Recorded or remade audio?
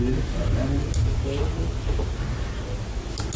recorded